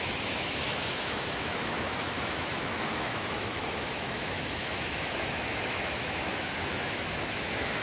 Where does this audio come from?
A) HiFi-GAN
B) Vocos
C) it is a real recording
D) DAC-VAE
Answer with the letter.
D